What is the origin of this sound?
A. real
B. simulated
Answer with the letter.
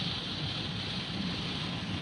B